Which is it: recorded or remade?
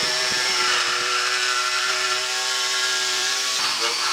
remade